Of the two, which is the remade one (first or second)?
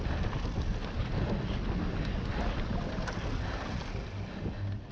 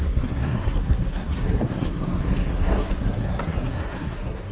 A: second